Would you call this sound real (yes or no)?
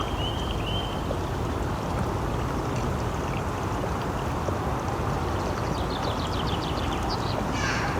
yes